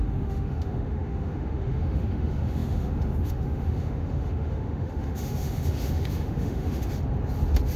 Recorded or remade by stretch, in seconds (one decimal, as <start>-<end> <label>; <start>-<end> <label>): 0.0-6.8 remade; 6.8-7.8 recorded